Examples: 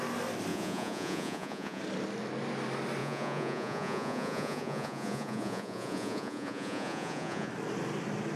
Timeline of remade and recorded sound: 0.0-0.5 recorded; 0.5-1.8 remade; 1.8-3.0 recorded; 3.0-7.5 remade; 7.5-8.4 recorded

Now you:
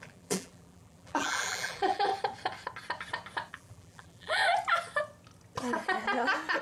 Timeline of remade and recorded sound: 0.0-2.1 remade; 2.1-3.5 recorded; 3.5-4.4 remade; 4.4-6.6 recorded

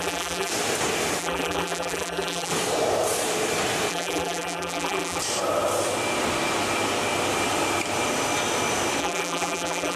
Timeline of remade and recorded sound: 0.0-0.5 remade; 0.5-1.2 recorded; 1.2-2.5 remade; 2.5-3.9 recorded; 3.9-5.2 remade; 5.2-9.0 recorded; 9.0-10.0 remade

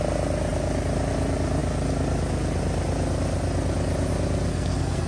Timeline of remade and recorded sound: 0.0-4.5 recorded; 4.5-5.1 remade

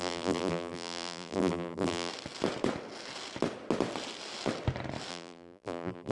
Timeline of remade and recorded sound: 0.0-2.1 remade; 2.1-5.1 recorded; 5.1-6.1 remade

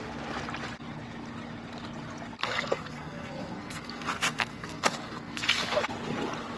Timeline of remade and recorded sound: 0.0-2.4 recorded; 2.4-5.9 remade; 5.9-6.6 recorded